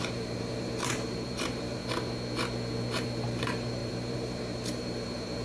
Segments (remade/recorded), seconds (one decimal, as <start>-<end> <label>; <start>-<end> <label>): 0.0-1.8 remade; 1.8-3.2 recorded; 3.2-5.4 remade